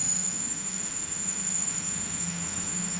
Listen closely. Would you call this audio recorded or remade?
remade